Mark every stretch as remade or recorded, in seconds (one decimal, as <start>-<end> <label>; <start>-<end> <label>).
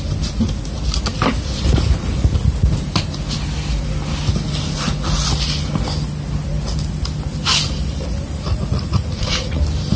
0.0-8.5 recorded; 8.5-9.6 remade; 9.6-10.0 recorded